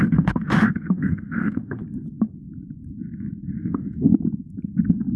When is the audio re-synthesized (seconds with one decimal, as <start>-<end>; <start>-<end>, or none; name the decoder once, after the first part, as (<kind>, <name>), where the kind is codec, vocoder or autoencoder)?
0.0-1.8 (autoencoder, DAC-VAE); 3.6-4.1

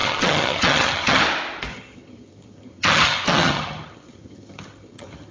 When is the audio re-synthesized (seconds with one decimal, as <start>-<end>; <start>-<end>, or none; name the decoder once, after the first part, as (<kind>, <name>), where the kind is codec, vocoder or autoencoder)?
0.0-1.2 (vocoder, HiFi-GAN); 1.7-5.3

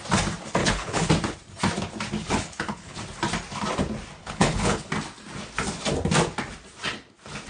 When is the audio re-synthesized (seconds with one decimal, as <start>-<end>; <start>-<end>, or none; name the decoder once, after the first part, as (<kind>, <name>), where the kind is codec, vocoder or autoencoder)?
0.6-1.1 (codec, HILCodec); 2.2-3.0; 4.2-4.9